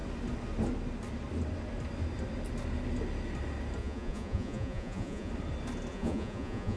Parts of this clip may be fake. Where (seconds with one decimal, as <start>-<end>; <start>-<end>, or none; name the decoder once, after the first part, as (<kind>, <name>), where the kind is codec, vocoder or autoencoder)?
3.8-5.3 (vocoder, Vocos); 5.9-6.8